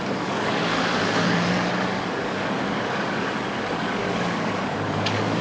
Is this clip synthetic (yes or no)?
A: yes